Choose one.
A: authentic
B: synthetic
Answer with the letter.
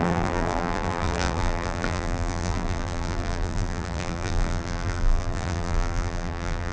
B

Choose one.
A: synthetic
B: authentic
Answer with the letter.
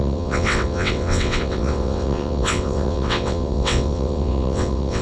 A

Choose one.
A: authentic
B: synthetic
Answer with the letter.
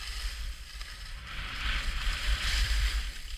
B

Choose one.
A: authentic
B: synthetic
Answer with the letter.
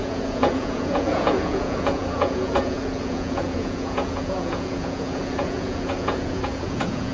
B